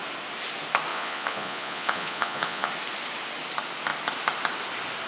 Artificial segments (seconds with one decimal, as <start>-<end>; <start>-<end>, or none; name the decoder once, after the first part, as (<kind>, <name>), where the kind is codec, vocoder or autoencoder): 0.9-2.7 (vocoder, Vocos)